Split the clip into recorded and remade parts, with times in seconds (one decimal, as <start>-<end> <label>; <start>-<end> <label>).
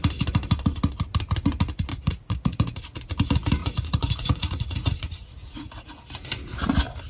0.0-1.9 recorded; 1.9-2.8 remade; 2.8-3.6 recorded; 3.6-5.9 remade; 5.9-7.1 recorded